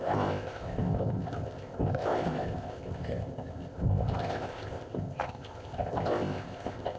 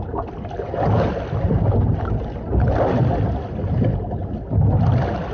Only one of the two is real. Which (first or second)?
second